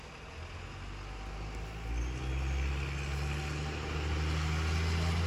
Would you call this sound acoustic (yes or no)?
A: yes